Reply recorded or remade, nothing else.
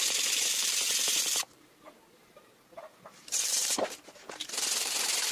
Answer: remade